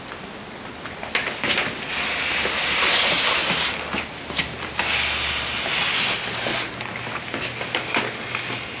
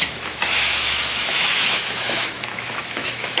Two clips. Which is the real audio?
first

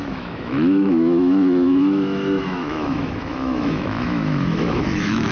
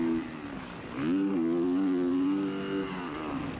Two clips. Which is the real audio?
second